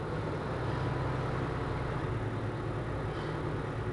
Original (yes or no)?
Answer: yes